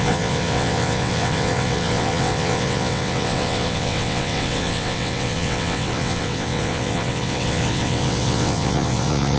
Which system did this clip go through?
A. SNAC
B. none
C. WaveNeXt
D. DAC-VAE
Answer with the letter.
C